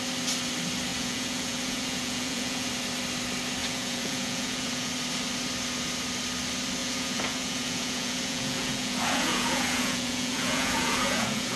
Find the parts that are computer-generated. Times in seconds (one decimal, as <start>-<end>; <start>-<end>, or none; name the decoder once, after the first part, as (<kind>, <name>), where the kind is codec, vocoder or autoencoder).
0.9-2.7 (vocoder, Vocos); 3.6-4.9; 6.8-11.6